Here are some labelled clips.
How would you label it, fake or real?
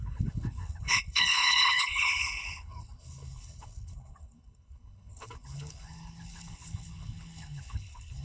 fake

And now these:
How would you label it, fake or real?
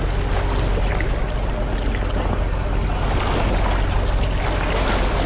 real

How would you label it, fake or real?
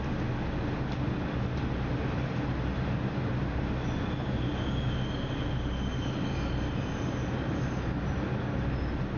real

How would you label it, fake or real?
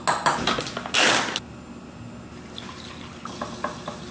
real